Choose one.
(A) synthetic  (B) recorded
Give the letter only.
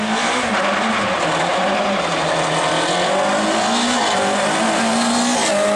B